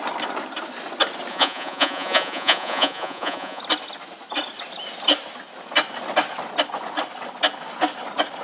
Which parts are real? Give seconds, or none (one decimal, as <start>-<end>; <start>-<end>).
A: 0.0-1.3; 3.6-8.4